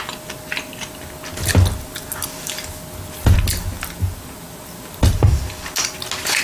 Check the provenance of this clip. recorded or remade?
recorded